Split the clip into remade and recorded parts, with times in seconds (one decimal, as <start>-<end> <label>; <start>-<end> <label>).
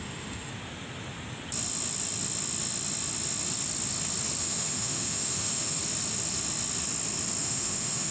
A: 0.0-0.5 remade; 0.5-4.4 recorded; 4.4-5.8 remade; 5.8-7.4 recorded; 7.4-8.1 remade